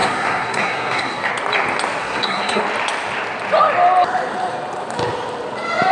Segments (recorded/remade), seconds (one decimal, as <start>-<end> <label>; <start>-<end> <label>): 0.0-1.3 remade; 1.3-2.0 recorded; 2.0-2.6 remade; 2.6-5.9 recorded